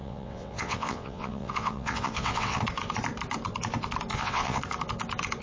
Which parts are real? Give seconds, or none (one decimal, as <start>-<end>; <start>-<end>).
2.6-4.1; 4.6-5.4